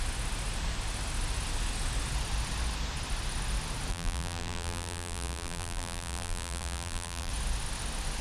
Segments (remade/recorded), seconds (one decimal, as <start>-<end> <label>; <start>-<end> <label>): 0.0-3.9 recorded; 3.9-7.3 remade; 7.3-8.2 recorded